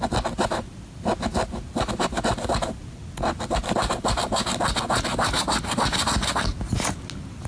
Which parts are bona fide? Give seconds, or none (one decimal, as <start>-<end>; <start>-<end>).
0.0-7.5